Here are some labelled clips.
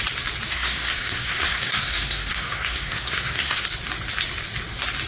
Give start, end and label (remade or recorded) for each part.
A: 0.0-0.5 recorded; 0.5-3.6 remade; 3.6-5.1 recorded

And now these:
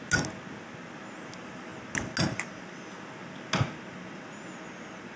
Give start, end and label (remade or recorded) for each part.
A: 0.0-5.2 recorded